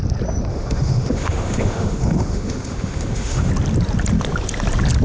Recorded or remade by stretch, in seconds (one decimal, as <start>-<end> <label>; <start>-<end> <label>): 0.0-0.5 recorded; 0.5-3.5 remade; 3.5-5.0 recorded